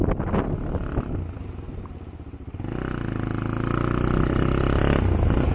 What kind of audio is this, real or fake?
real